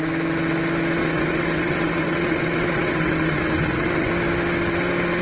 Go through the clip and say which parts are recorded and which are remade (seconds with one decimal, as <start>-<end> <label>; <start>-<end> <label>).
0.0-1.0 recorded; 1.0-4.1 remade; 4.1-5.2 recorded